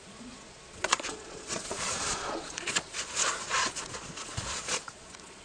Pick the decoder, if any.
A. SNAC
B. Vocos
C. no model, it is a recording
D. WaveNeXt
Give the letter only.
B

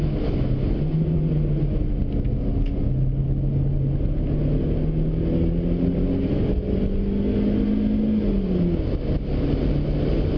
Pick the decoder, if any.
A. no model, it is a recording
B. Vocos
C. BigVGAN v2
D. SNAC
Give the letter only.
A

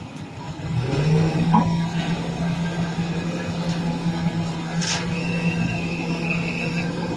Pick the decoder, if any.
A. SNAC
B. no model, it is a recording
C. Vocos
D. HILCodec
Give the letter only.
A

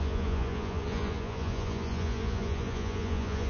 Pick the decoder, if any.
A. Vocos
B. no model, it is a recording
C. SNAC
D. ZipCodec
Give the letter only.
A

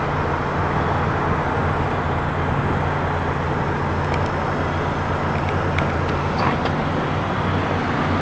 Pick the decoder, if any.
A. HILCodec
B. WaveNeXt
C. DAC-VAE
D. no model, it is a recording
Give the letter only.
D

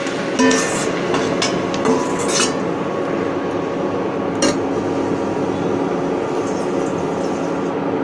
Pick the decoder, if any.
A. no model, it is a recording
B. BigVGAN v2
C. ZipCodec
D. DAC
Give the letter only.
A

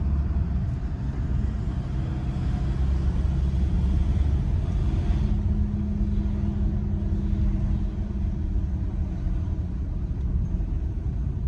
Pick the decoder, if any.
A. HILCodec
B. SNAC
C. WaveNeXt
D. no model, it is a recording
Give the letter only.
D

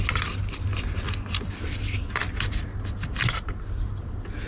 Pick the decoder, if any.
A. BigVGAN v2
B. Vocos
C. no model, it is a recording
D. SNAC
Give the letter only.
C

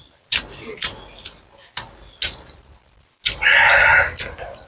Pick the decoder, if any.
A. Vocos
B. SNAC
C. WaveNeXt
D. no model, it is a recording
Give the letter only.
D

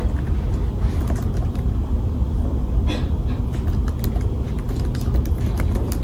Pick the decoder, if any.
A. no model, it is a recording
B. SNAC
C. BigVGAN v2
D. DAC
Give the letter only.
A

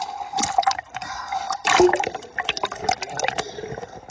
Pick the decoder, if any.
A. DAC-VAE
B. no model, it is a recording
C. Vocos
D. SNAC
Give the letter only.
B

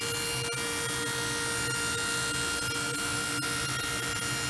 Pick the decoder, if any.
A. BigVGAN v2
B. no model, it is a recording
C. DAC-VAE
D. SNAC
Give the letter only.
B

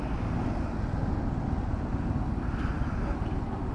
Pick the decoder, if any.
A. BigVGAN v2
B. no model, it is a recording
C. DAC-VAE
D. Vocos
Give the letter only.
B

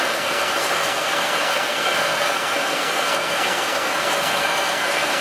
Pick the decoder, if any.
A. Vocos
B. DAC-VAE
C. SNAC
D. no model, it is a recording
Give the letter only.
C